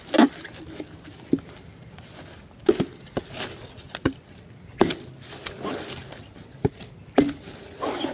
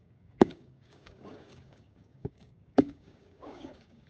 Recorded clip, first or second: first